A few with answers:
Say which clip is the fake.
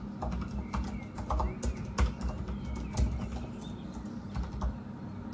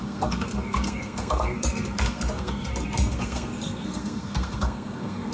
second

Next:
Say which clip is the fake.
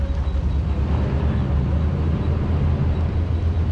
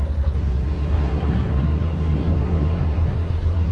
second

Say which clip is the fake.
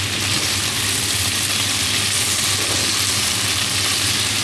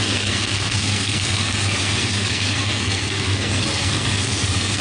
second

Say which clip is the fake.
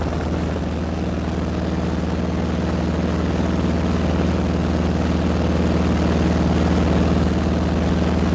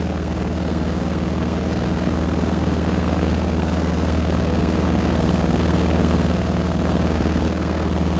second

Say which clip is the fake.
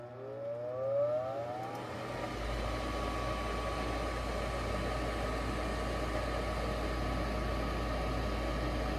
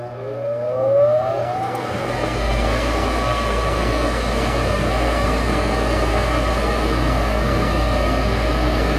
second